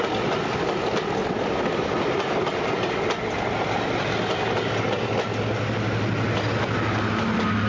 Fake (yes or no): no